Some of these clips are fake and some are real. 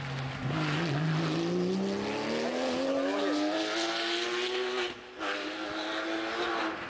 real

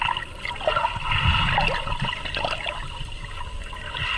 real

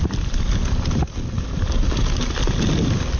real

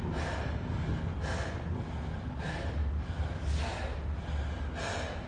real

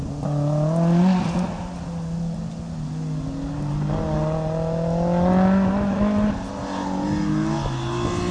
real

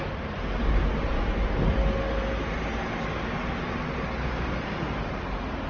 real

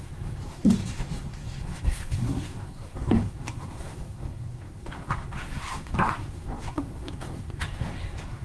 fake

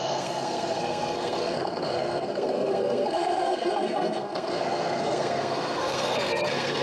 fake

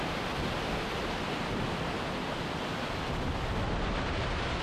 real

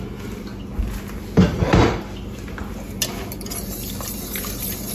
real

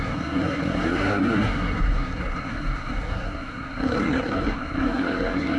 fake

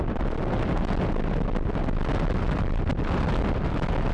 real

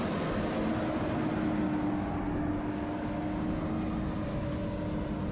real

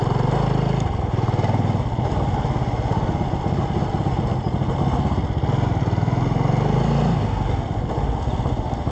real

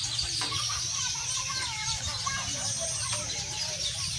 fake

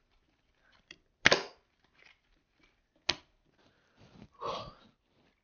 real